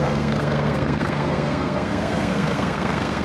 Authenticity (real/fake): fake